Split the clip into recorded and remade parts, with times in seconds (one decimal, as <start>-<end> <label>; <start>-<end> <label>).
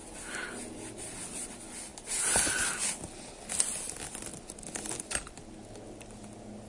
0.0-6.7 recorded